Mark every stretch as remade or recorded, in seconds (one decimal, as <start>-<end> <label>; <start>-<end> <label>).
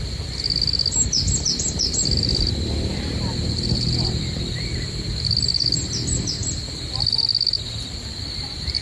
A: 0.0-8.8 recorded